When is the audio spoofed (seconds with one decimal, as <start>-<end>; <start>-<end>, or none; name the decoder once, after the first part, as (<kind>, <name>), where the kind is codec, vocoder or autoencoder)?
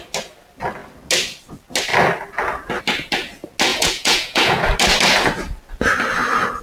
3.7-4.6 (vocoder, Vocos)